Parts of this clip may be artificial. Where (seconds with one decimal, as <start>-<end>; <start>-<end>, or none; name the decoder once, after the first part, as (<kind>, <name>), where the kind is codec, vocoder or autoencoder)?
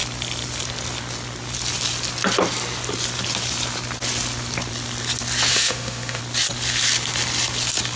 5.5-6.2 (autoencoder, DAC-VAE)